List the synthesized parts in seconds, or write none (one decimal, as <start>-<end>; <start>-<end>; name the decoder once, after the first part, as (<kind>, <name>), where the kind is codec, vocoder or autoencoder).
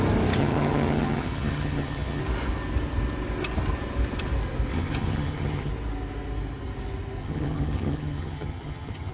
0.4-2.2 (vocoder, HiFi-GAN); 4.7-5.7; 7.2-9.1